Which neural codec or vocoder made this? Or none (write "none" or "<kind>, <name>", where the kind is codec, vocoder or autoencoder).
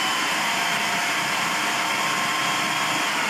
vocoder, BigVGAN v2